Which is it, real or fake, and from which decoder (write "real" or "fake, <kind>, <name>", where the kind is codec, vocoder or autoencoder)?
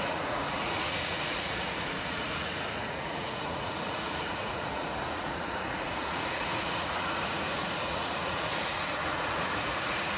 fake, vocoder, Vocos